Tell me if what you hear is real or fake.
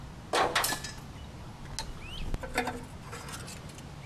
real